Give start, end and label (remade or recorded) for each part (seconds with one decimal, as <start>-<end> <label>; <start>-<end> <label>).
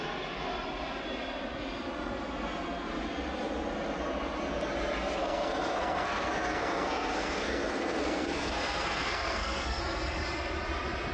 0.0-5.2 recorded; 5.2-9.8 remade; 9.8-11.1 recorded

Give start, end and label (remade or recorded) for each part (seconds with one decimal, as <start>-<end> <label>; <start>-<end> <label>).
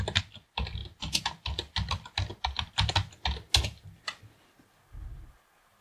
0.0-5.8 recorded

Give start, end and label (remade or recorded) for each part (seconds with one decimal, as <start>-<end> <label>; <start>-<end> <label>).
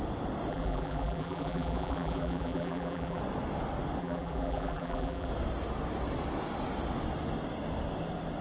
0.0-0.5 recorded; 0.5-3.2 remade; 3.2-4.0 recorded; 4.0-5.3 remade; 5.3-8.4 recorded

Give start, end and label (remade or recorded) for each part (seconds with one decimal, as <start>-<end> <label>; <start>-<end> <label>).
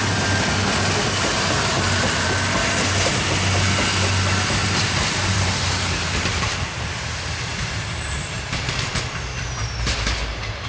0.0-1.0 recorded; 1.0-2.3 remade; 2.3-4.6 recorded; 4.6-9.0 remade; 9.0-10.7 recorded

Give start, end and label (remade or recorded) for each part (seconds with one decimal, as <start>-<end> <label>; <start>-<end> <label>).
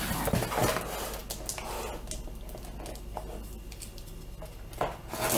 0.0-5.4 recorded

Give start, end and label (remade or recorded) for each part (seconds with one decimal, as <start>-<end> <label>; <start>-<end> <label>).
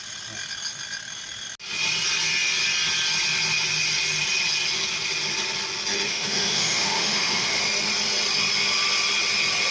0.0-6.1 recorded; 6.1-7.6 remade; 7.6-9.7 recorded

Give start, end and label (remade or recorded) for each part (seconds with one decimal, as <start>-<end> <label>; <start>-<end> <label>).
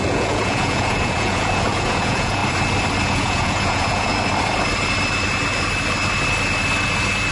0.0-2.4 remade; 2.4-3.0 recorded; 3.0-4.1 remade; 4.1-7.3 recorded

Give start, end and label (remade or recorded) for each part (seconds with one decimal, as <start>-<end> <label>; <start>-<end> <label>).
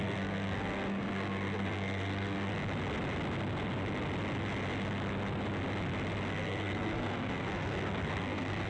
0.0-2.5 remade; 2.5-6.3 recorded; 6.3-8.7 remade